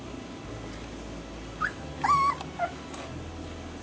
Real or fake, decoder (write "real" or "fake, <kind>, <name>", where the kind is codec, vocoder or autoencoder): real